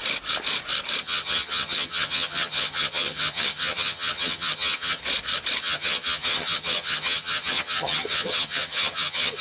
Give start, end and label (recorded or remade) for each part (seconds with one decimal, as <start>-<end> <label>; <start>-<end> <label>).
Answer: 0.0-1.0 recorded; 1.0-5.0 remade; 5.0-5.6 recorded; 5.6-9.4 remade